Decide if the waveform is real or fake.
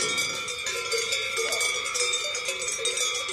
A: real